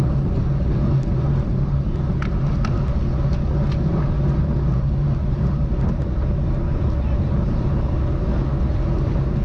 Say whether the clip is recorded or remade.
recorded